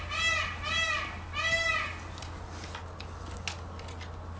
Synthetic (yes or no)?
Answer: no